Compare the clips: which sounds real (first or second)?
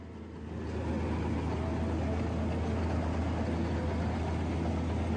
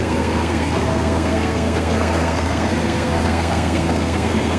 first